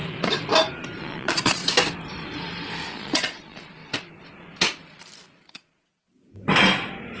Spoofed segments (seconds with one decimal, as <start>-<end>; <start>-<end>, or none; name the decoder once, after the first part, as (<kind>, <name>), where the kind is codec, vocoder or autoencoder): 1.0-1.6 (vocoder, Vocos); 2.9-3.8; 5.4-6.1